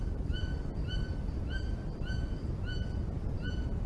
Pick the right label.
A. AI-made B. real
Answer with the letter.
B